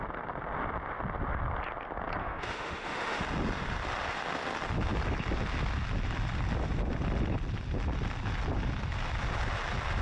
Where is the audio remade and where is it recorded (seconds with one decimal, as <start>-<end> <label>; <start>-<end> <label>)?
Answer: 0.0-2.2 recorded; 2.2-3.2 remade; 3.2-10.0 recorded